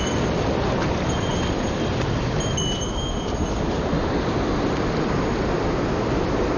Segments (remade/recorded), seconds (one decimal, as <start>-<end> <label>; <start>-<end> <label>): 0.0-6.6 recorded